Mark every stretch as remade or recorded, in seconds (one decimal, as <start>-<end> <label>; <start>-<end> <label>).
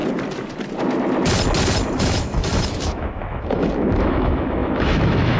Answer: 0.0-2.0 recorded; 2.0-5.4 remade